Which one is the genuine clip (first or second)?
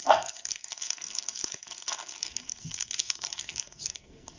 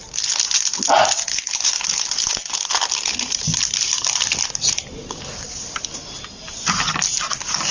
second